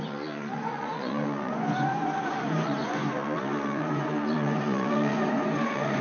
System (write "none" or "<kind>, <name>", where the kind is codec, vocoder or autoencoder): vocoder, Vocos